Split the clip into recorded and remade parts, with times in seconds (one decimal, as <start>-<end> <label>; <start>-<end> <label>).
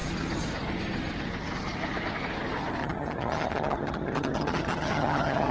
0.0-2.8 recorded; 2.8-5.5 remade